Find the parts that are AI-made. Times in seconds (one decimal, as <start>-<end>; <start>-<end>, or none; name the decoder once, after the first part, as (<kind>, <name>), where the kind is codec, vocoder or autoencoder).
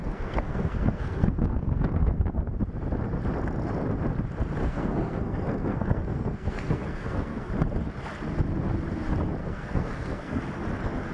0.0-2.5 (codec, SNAC); 4.6-7.5; 9.4-10.4